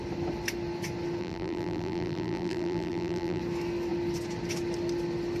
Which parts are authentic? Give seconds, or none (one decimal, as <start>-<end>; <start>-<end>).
0.0-1.2; 3.4-5.4